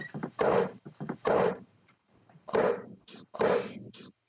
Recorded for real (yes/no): no